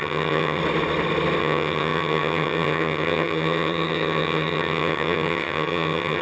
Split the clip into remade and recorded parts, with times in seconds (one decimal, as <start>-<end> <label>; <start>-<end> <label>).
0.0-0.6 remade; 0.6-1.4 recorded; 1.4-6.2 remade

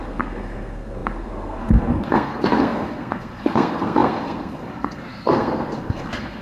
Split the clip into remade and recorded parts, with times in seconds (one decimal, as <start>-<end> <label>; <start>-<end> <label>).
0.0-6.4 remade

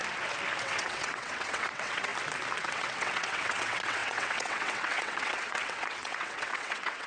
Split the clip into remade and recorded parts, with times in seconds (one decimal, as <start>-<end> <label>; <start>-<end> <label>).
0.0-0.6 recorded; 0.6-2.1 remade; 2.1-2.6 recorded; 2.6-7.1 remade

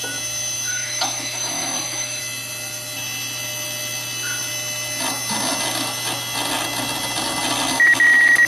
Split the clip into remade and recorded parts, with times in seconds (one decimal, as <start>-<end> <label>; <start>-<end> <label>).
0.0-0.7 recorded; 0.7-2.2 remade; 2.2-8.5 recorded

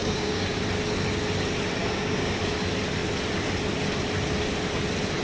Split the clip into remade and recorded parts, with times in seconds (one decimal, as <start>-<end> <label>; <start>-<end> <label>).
0.0-0.6 remade; 0.6-1.8 recorded; 1.8-2.4 remade; 2.4-5.2 recorded

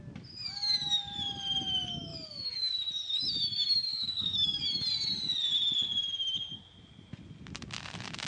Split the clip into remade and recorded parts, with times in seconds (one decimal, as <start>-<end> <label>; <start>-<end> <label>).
0.0-3.9 recorded; 3.9-4.6 remade; 4.6-8.3 recorded

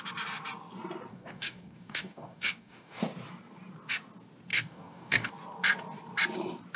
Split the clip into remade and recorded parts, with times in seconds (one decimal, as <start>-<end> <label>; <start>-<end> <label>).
0.0-1.1 recorded; 1.1-3.0 remade; 3.0-4.5 recorded; 4.5-5.3 remade; 5.3-6.8 recorded